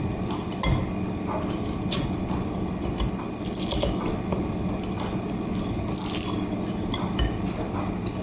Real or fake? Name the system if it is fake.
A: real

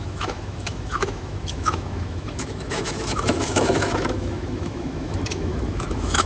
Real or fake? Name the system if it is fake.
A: fake, autoencoder, DAC-VAE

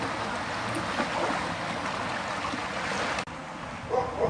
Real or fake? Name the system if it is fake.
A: real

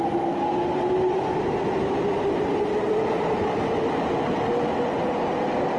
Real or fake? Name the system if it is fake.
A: real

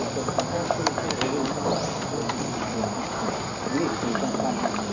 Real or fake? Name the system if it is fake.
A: real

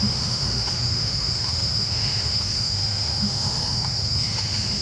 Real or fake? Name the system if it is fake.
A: fake, autoencoder, DAC-VAE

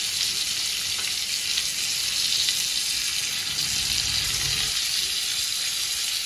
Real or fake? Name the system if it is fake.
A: real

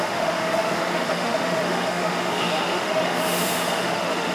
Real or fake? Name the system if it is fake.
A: fake, autoencoder, DAC-VAE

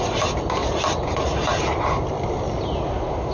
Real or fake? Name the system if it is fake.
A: real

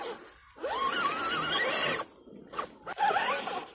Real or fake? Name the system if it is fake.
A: real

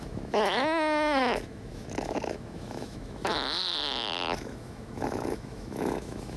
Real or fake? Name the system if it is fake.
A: fake, autoencoder, DAC-VAE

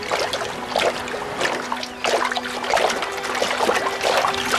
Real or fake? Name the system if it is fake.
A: real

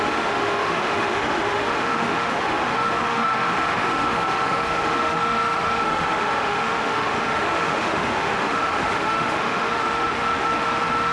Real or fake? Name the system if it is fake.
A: fake, autoencoder, DAC-VAE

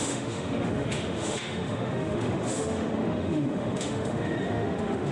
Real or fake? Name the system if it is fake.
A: fake, autoencoder, DAC-VAE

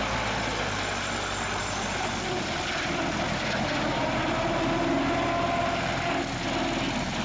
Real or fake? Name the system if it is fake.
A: real